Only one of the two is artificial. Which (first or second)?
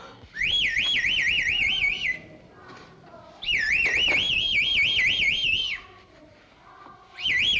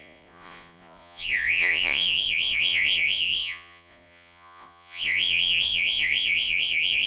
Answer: second